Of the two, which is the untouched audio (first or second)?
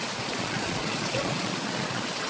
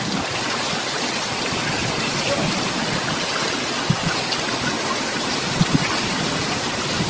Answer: second